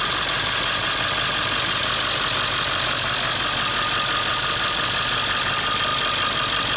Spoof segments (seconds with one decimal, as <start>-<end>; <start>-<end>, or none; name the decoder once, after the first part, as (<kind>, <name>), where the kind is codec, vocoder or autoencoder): none